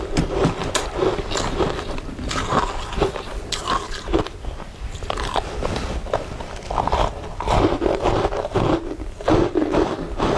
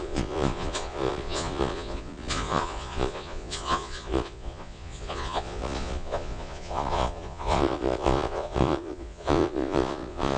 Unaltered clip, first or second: first